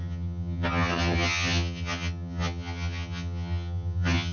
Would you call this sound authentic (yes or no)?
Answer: no